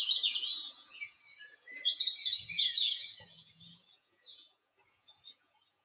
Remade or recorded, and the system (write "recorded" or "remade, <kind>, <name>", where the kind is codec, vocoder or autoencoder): remade, vocoder, Vocos